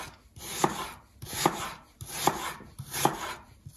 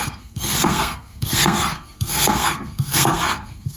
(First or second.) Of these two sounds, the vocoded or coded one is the second